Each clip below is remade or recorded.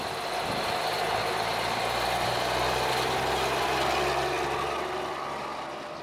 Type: recorded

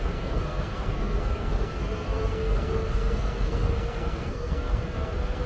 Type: remade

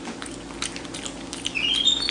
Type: recorded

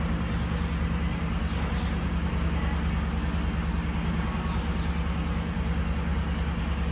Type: recorded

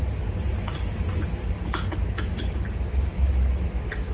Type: recorded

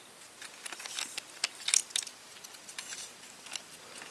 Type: recorded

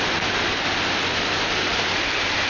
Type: recorded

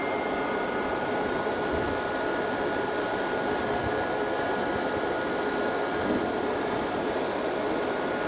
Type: recorded